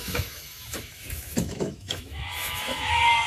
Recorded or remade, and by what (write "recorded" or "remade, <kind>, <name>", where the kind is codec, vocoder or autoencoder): remade, autoencoder, DAC-VAE